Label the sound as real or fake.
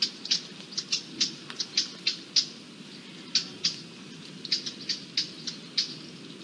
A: real